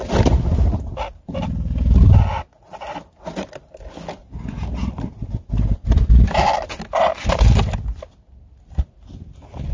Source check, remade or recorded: recorded